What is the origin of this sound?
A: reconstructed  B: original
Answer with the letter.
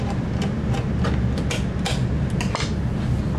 B